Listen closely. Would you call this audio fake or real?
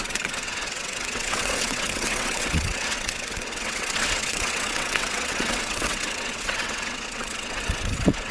fake